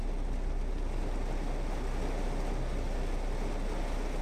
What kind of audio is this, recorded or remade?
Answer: recorded